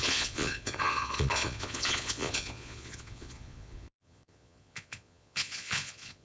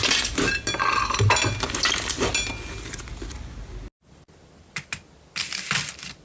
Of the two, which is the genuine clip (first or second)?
second